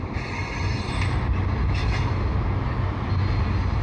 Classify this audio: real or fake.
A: real